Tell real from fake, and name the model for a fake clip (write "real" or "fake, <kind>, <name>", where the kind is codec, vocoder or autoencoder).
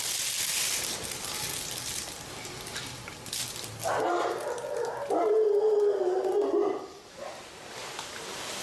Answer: real